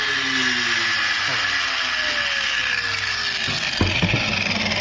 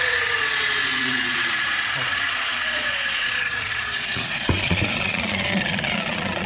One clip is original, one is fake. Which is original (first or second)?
first